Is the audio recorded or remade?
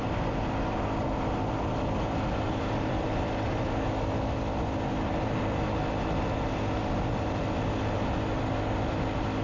recorded